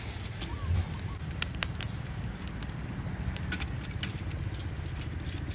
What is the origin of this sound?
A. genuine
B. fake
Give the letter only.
A